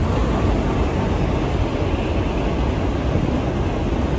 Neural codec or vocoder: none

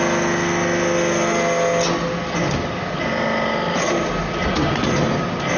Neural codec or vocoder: none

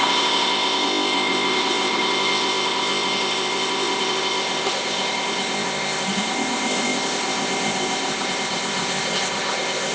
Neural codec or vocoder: codec, ZipCodec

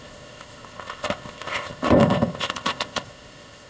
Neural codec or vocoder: codec, ZipCodec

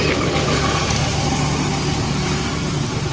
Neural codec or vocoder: none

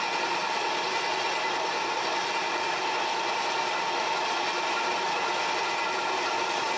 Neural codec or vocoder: none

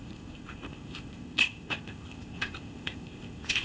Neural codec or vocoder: codec, ZipCodec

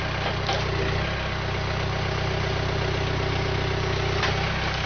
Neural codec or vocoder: none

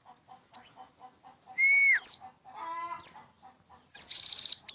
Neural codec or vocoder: none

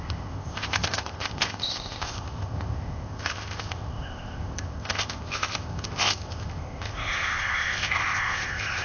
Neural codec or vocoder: codec, ZipCodec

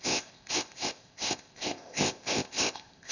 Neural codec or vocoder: codec, ZipCodec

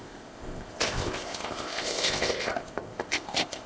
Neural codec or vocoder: codec, ZipCodec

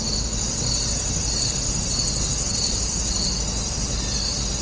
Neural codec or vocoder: none